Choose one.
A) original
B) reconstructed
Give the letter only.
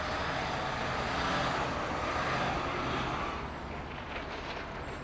A